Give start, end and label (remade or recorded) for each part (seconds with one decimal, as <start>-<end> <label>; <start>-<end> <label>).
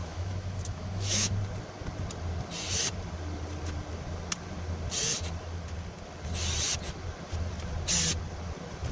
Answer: 0.0-1.3 remade; 1.3-8.9 recorded